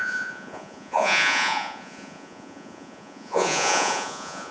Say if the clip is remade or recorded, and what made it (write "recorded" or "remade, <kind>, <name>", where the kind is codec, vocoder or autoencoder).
remade, vocoder, Vocos